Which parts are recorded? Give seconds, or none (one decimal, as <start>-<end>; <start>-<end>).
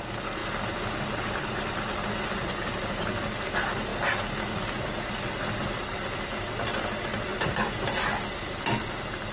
0.0-7.3; 8.2-9.3